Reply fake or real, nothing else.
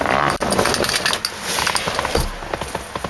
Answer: real